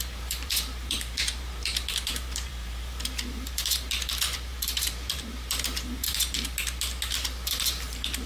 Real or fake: fake